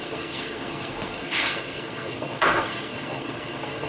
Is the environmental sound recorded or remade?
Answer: remade